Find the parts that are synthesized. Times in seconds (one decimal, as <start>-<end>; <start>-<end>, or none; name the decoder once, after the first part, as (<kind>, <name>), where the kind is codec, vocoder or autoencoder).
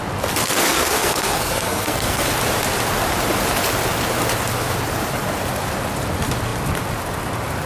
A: 0.4-2.3 (codec, SNAC)